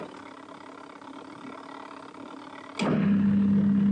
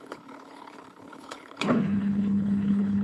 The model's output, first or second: second